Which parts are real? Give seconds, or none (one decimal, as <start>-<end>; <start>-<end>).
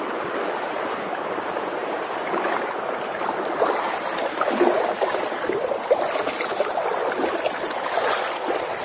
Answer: 0.0-8.8